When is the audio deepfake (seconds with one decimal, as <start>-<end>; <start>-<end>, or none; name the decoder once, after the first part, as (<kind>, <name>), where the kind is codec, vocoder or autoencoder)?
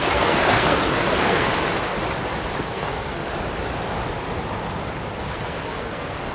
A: 0.0-1.5 (codec, SNAC); 2.6-3.2; 5.2-6.3